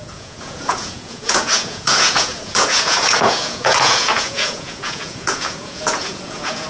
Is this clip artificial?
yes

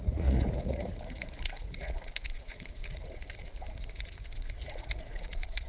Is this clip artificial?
yes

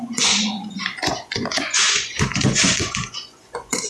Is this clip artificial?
yes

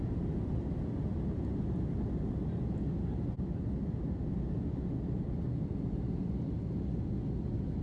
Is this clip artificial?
no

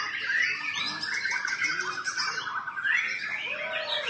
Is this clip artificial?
no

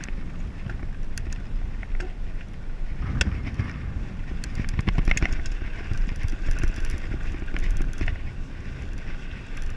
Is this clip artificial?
no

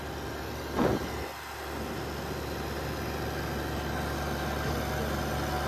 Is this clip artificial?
no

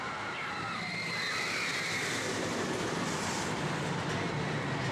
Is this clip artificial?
no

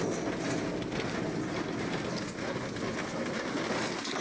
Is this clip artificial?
no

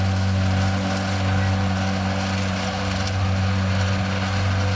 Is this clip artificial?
no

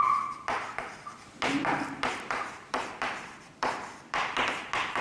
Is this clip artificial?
no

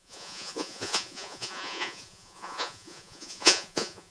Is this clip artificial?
yes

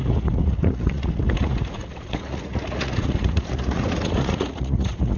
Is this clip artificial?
yes